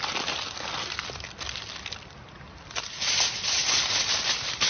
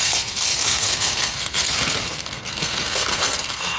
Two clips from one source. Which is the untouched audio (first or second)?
first